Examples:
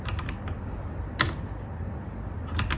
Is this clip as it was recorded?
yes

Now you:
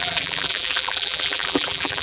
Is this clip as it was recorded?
no